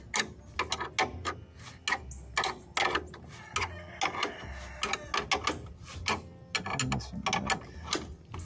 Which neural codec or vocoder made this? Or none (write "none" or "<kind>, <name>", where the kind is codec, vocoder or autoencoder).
none